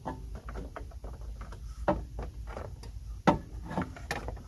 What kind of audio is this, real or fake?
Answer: real